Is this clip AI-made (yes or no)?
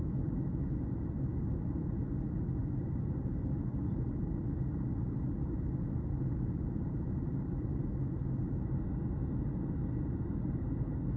no